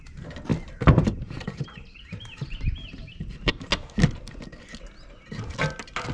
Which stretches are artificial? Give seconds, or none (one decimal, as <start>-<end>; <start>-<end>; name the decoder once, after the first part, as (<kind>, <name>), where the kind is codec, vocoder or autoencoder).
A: 0.5-3.5 (vocoder, BigVGAN v2)